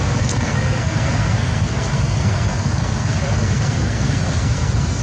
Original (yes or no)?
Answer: no